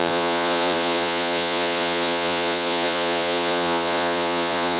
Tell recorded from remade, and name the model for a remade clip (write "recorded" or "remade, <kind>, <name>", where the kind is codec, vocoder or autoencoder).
remade, vocoder, Vocos